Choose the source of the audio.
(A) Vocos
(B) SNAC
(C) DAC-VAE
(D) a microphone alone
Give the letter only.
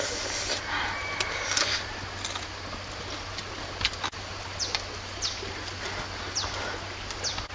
D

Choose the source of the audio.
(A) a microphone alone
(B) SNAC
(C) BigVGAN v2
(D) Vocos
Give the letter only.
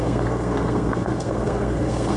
B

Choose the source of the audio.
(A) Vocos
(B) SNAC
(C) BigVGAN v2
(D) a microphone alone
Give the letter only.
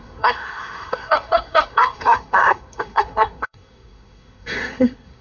B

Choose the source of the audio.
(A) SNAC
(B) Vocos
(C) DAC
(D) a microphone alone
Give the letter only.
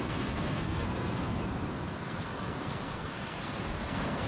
A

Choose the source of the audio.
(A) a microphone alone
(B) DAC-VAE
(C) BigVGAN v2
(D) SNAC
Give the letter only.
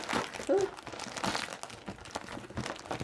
A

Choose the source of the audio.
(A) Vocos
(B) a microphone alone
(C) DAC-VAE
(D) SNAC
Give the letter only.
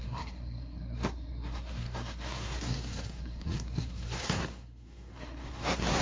D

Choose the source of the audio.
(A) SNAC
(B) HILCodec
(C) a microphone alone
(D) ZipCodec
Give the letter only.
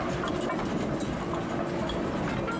C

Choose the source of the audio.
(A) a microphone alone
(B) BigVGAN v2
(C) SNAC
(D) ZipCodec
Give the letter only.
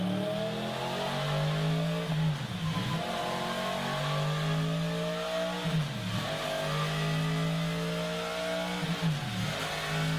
A